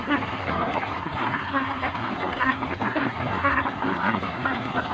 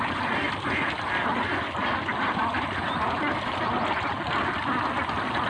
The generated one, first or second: first